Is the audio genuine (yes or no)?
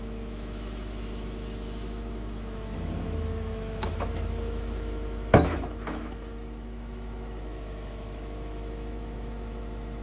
no